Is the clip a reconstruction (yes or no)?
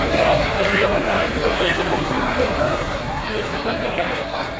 yes